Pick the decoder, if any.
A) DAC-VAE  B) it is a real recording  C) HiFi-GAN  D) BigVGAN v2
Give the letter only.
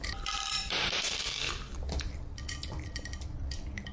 D